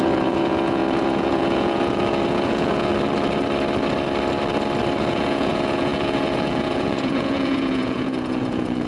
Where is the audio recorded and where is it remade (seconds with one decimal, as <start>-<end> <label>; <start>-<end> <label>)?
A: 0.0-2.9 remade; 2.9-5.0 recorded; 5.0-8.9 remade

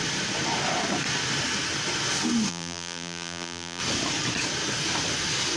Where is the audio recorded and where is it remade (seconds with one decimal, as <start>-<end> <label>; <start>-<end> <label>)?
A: 0.0-2.5 recorded; 2.5-3.8 remade; 3.8-5.6 recorded

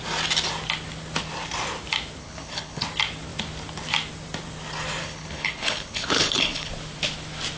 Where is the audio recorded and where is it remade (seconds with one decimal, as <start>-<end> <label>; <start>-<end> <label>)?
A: 0.0-2.2 recorded; 2.2-2.8 remade; 2.8-5.0 recorded; 5.0-6.7 remade; 6.7-7.6 recorded

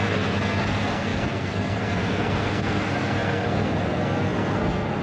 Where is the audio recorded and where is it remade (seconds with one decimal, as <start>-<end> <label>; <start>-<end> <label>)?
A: 0.0-5.0 remade